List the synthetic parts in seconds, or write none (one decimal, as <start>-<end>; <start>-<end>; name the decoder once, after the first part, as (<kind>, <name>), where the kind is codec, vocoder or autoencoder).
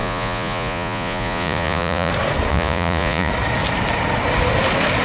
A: 0.0-2.1 (vocoder, Vocos); 2.5-3.3